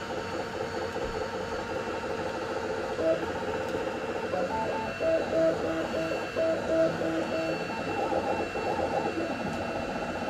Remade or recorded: recorded